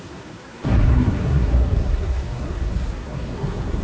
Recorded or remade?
remade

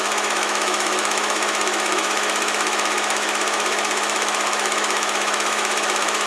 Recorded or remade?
remade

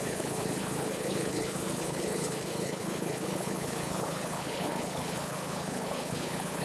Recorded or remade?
remade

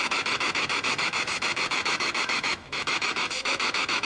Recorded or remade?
remade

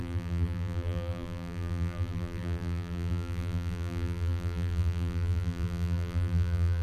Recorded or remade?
remade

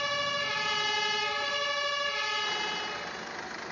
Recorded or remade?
recorded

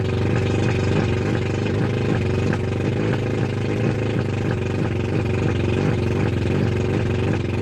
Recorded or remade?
recorded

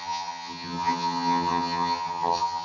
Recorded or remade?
remade